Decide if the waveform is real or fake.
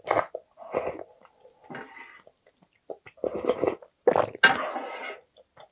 real